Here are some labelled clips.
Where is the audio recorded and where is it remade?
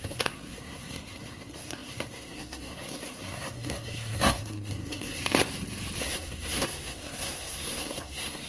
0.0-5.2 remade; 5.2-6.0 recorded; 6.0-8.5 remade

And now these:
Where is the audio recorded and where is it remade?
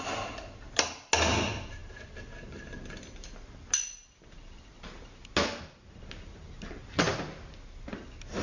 0.0-8.4 recorded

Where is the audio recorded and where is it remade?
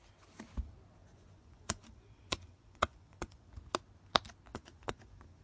0.0-1.0 recorded; 1.0-3.5 remade; 3.5-4.5 recorded; 4.5-5.4 remade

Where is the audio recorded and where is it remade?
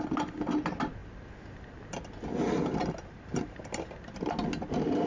0.0-5.1 recorded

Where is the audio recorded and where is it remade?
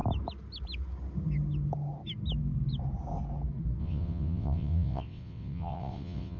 0.0-3.8 recorded; 3.8-6.4 remade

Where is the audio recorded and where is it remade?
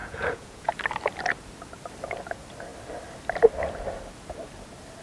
0.0-0.7 remade; 0.7-5.0 recorded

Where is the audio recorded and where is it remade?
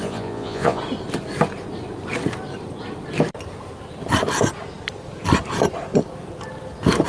0.0-0.8 remade; 0.8-7.1 recorded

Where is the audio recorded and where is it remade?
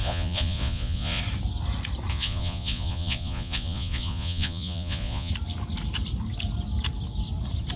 0.0-1.2 remade; 1.2-2.1 recorded; 2.1-5.3 remade; 5.3-7.8 recorded